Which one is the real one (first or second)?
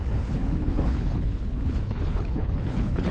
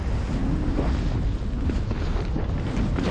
second